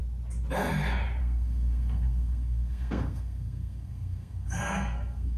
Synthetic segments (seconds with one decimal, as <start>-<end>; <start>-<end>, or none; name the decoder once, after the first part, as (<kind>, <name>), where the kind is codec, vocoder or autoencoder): 1.2-5.4 (codec, SNAC)